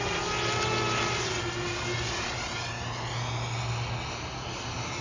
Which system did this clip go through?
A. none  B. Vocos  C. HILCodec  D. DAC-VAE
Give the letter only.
A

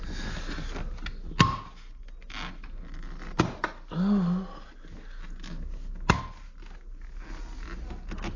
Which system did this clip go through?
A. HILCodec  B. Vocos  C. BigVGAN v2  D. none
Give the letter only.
D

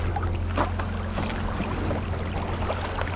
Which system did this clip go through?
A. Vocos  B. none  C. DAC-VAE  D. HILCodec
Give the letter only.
B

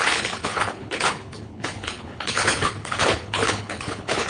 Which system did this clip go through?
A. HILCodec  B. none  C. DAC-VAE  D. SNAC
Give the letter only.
A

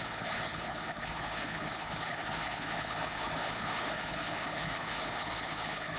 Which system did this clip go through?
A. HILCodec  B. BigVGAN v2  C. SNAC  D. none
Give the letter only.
A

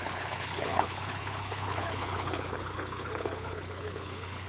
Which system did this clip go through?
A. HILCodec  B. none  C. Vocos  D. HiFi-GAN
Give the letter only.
A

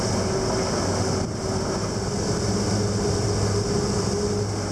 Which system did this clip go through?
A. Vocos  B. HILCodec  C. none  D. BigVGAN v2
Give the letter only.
C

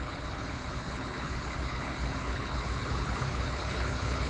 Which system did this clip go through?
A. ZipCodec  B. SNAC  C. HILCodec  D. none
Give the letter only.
C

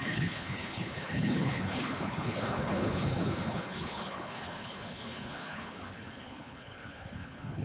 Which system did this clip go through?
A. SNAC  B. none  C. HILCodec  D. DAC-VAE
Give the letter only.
C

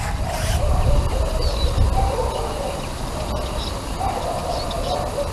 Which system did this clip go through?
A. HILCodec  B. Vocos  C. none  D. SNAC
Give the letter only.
C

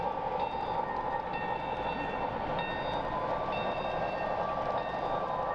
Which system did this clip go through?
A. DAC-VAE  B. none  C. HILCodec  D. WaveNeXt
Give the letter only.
B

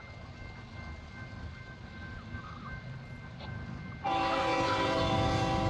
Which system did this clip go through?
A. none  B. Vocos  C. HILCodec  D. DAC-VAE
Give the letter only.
A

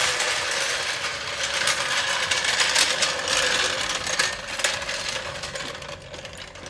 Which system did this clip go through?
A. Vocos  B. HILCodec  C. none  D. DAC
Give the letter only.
C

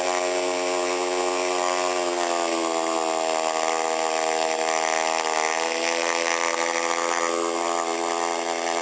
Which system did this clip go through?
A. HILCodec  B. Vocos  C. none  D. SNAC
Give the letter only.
C